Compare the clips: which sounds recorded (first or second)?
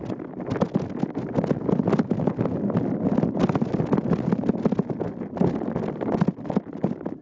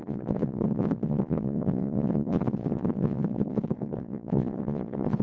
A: first